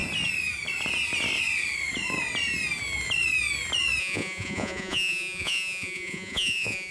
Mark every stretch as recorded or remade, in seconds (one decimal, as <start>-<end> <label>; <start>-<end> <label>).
0.0-4.0 recorded; 4.0-6.9 remade